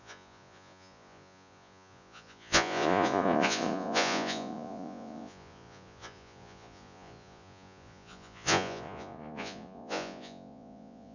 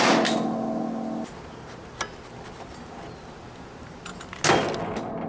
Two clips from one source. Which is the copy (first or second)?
first